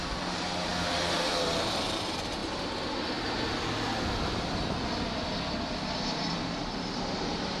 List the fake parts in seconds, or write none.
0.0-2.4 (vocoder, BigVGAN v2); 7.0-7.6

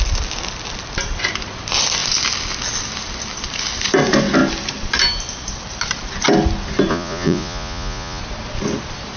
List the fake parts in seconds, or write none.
6.9-8.2 (vocoder, Vocos)

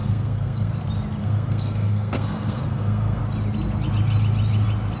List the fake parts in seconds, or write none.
0.0-0.7 (codec, SNAC); 1.2-3.2